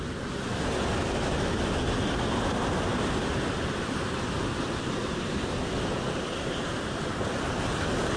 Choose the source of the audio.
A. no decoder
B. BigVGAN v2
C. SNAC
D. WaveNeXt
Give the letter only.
A